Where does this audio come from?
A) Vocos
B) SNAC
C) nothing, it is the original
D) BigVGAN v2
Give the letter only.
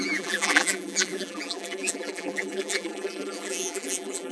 D